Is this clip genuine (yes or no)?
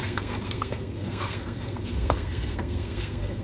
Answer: no